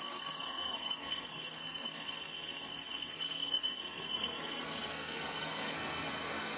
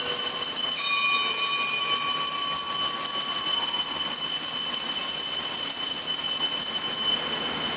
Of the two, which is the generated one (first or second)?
first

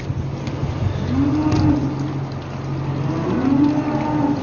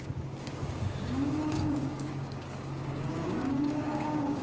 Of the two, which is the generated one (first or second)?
second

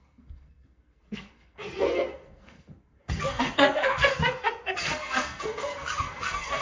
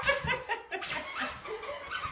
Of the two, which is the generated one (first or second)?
first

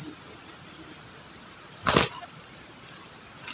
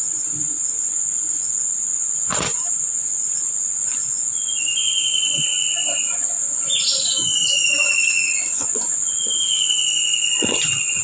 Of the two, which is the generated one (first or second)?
second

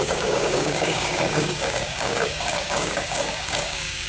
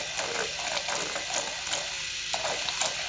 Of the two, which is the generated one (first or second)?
first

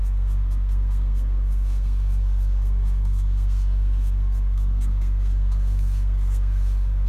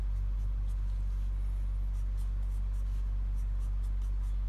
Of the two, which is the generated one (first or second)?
first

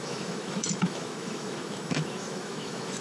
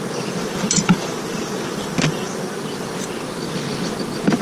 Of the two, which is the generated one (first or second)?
first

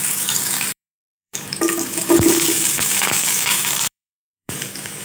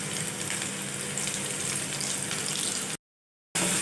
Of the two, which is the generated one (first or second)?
first